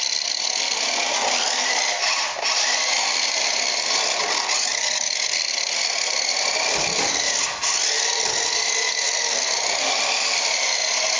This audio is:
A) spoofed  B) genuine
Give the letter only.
B